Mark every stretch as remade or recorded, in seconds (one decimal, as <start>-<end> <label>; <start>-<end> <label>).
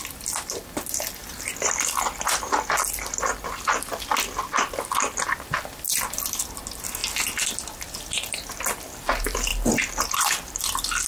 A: 0.0-7.0 remade; 7.0-9.0 recorded; 9.0-11.1 remade